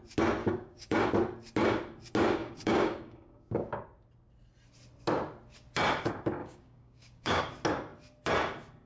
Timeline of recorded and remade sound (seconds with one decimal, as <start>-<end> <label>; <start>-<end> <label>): 0.0-0.4 recorded; 0.4-1.0 remade; 1.0-2.4 recorded; 2.4-3.8 remade; 3.8-6.4 recorded; 6.4-7.4 remade; 7.4-8.9 recorded